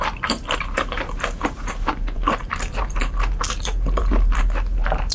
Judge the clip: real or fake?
fake